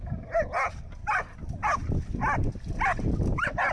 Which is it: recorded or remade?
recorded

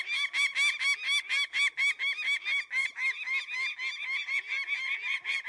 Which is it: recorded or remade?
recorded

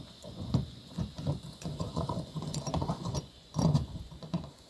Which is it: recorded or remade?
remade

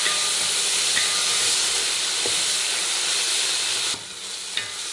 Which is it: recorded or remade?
recorded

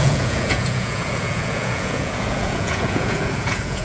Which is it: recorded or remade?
remade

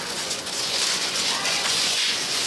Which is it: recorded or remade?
remade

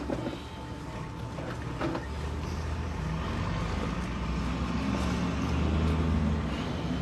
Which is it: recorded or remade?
recorded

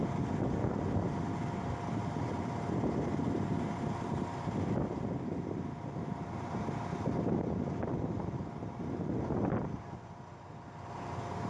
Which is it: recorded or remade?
recorded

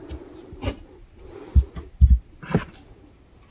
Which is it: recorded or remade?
recorded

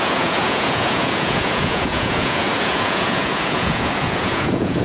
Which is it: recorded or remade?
remade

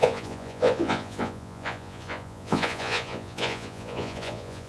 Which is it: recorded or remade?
remade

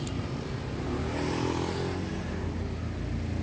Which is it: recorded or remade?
recorded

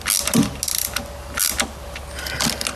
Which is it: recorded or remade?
recorded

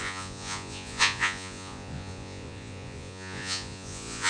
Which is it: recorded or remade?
remade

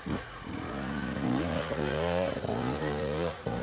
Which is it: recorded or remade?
remade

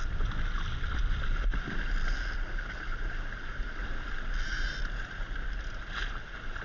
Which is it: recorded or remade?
recorded